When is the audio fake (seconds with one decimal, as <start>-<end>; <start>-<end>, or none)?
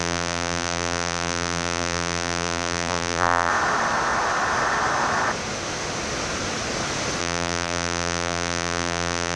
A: 0.0-3.5; 7.2-9.4